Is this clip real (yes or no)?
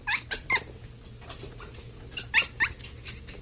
yes